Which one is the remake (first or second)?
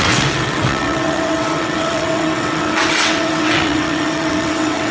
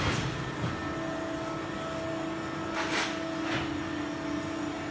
first